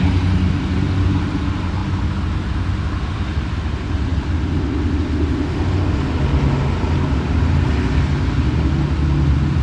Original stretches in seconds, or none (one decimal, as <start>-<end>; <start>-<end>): 0.0-9.6